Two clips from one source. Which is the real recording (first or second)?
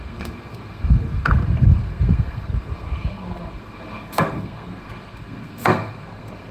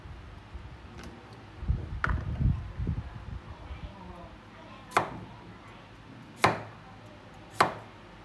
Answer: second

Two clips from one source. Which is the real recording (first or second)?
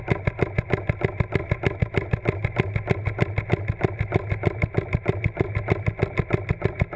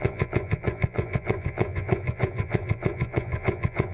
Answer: first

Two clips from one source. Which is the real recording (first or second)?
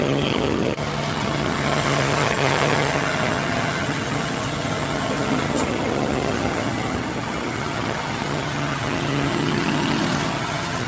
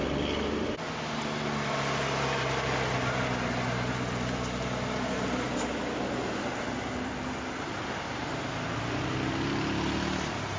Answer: second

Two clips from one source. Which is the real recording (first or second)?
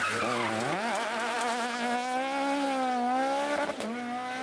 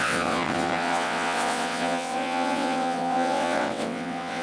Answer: first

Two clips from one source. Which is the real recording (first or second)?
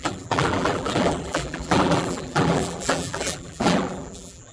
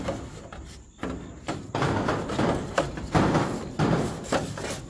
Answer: second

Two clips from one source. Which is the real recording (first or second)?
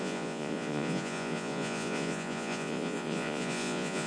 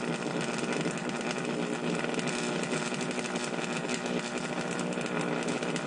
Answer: second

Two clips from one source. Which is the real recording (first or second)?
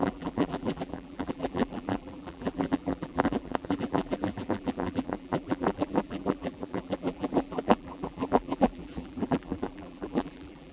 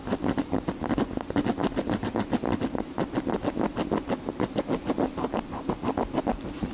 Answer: second